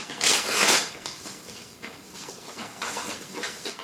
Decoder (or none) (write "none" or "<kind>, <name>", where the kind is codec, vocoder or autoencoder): codec, SNAC